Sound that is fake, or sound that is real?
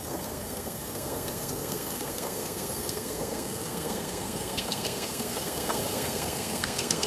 fake